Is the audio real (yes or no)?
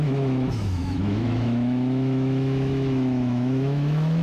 no